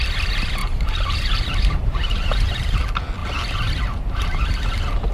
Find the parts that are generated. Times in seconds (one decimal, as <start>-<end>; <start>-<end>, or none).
0.6-2.8